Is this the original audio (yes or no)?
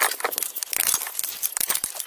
no